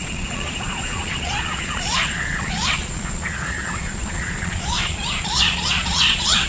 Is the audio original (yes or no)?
no